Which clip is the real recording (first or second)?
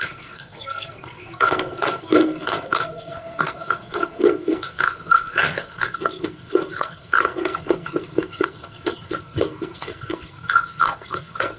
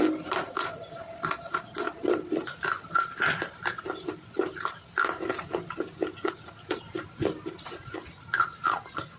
second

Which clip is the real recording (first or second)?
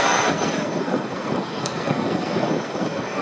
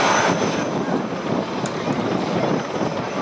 second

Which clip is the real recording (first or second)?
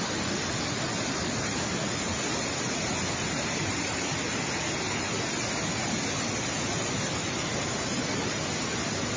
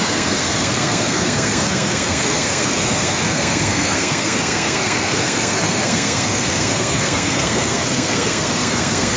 first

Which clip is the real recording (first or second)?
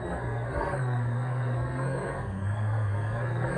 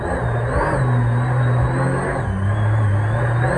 second